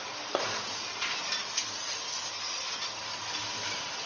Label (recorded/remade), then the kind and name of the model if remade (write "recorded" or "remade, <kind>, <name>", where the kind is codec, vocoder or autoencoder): recorded